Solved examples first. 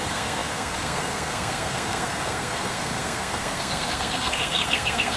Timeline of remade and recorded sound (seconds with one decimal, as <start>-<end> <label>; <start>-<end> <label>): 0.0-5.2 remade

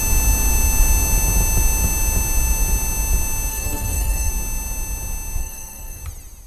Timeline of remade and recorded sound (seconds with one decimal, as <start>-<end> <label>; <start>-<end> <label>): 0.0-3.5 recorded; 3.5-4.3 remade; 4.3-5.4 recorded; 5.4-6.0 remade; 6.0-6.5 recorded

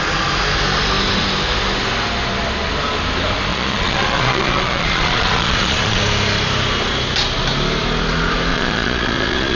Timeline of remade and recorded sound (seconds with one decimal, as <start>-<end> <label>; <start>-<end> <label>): 0.0-3.5 recorded; 3.5-6.0 remade; 6.0-8.5 recorded; 8.5-9.6 remade